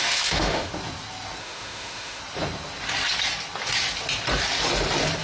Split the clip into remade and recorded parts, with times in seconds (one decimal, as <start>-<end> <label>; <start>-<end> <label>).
0.0-0.7 remade; 0.7-1.4 recorded; 1.4-2.2 remade; 2.2-5.2 recorded